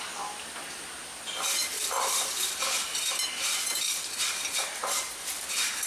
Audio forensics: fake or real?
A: real